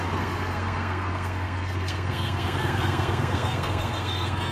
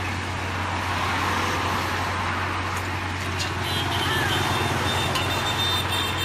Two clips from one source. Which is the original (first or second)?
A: second